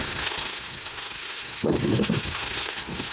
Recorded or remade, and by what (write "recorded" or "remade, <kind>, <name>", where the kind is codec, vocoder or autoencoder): remade, codec, SNAC